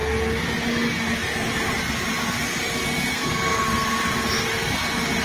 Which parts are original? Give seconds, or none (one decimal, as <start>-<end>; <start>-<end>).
0.0-3.1; 4.0-5.2